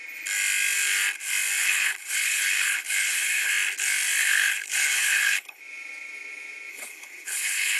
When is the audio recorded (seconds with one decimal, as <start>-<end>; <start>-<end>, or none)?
0.0-1.6; 3.5-4.2; 5.6-6.7